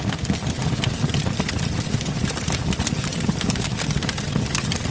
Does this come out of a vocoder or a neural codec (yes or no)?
no